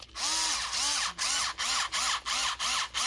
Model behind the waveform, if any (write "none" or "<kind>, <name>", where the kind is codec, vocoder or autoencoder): none